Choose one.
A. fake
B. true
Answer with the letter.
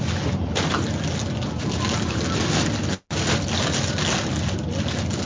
B